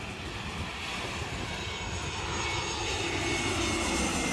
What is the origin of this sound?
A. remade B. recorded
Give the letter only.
B